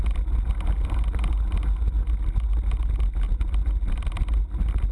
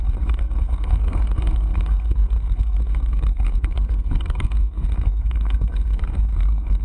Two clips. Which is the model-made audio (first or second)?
second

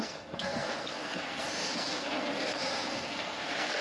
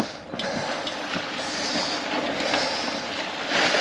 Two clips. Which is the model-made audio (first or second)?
first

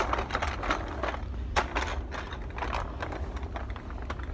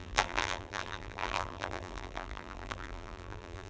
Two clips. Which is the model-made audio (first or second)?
second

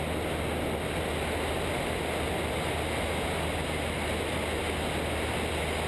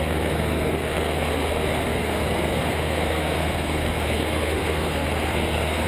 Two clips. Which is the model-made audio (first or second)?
second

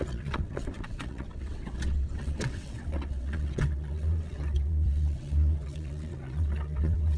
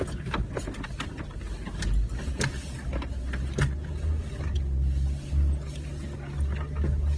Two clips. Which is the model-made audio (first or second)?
first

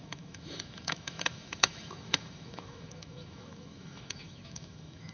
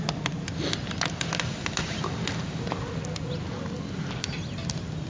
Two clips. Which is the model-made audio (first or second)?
first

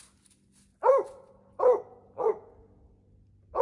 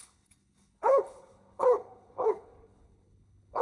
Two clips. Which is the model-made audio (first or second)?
second